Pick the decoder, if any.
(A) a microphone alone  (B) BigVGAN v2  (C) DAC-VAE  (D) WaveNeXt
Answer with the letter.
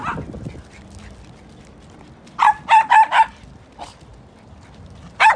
A